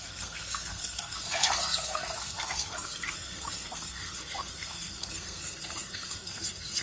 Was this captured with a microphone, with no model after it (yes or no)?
no